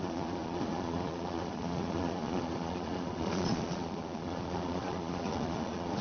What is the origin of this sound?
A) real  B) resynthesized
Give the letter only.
B